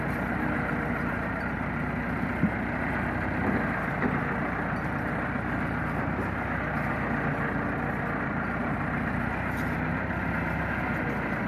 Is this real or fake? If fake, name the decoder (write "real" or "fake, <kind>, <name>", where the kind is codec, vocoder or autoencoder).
real